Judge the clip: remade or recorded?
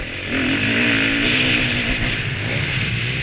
recorded